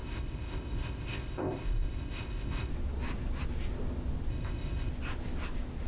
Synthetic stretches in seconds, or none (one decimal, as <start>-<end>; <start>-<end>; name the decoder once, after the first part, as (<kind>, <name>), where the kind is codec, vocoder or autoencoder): 0.0-2.7 (codec, ZipCodec); 4.3-4.9